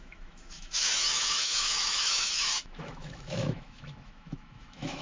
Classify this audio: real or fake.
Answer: fake